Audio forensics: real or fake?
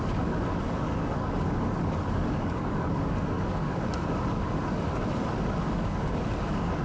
fake